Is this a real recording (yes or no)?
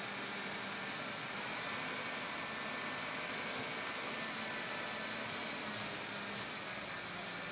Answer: yes